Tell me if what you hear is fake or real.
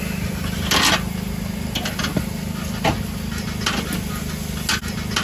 real